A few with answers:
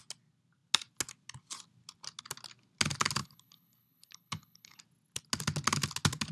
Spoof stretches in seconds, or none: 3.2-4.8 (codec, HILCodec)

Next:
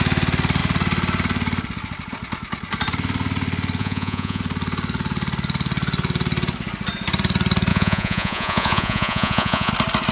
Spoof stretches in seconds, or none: 3.8-4.4 (vocoder, Vocos); 7.7-9.7

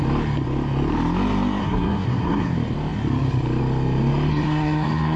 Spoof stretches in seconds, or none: 1.6-2.5 (codec, SNAC); 4.3-5.2

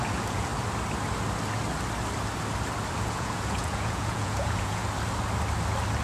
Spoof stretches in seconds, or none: 0.0-0.5 (vocoder, Vocos); 3.0-4.8

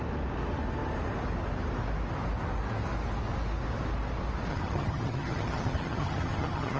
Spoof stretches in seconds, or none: 4.5-6.8 (vocoder, HiFi-GAN)

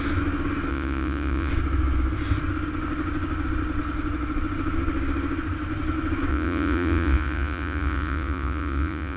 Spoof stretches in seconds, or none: 0.7-1.5 (vocoder, Vocos); 6.3-9.2

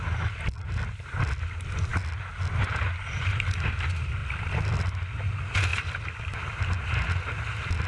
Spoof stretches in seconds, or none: none